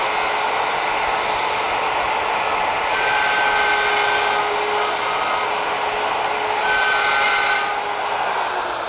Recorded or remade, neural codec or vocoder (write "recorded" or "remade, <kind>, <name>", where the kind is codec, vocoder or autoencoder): recorded